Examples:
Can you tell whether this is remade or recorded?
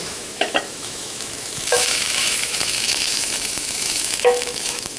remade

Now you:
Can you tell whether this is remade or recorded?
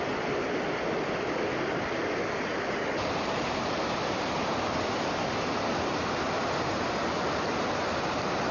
recorded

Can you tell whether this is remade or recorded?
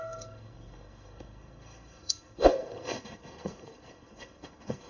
remade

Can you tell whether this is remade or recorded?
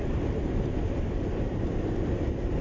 recorded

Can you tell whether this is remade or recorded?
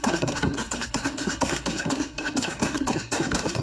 remade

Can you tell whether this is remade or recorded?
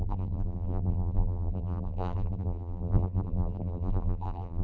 remade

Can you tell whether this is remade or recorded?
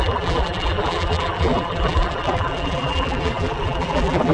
remade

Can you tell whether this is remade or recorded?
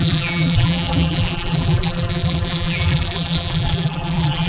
remade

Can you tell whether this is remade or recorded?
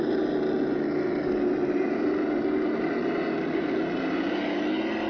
recorded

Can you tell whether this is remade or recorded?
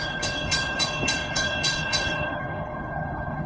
remade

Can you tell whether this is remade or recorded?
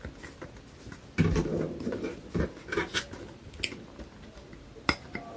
recorded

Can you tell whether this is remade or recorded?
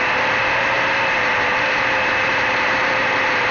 remade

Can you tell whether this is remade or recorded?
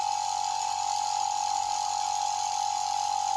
recorded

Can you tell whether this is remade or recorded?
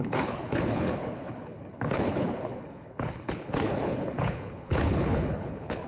remade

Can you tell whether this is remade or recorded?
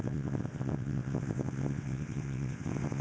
remade